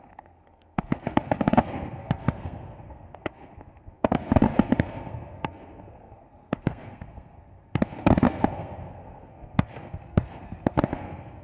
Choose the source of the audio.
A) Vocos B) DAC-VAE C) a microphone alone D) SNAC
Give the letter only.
D